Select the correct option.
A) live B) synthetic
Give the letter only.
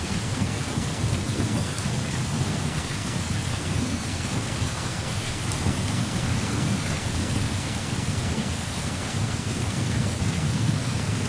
B